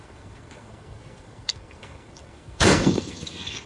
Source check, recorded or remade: remade